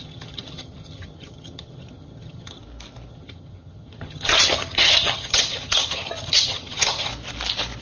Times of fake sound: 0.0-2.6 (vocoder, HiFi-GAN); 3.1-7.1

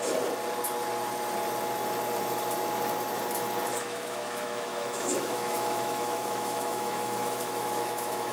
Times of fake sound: 3.7-8.3 (autoencoder, DAC-VAE)